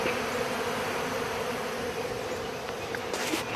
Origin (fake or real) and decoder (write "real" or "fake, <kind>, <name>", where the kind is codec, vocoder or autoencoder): real